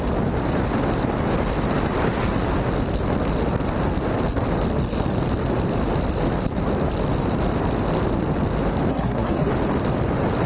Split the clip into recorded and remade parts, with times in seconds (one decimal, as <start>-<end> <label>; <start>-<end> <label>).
0.0-8.9 recorded; 8.9-9.5 remade; 9.5-10.5 recorded